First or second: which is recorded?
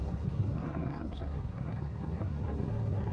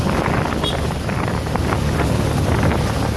second